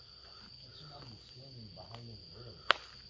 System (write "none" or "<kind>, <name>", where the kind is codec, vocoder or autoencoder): vocoder, BigVGAN v2